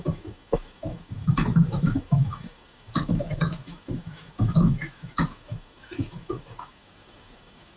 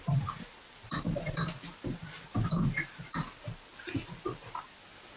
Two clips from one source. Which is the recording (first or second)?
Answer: second